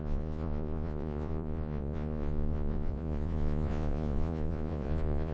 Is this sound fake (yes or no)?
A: yes